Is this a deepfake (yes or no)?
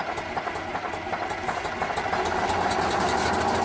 no